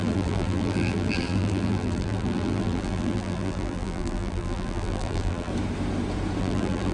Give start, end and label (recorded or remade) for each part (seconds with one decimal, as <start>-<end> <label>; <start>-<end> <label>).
0.0-5.5 remade; 5.5-6.4 recorded; 6.4-6.9 remade